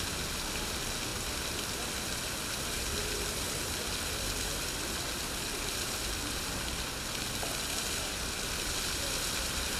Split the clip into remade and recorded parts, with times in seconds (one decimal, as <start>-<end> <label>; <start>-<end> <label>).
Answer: 0.0-9.8 recorded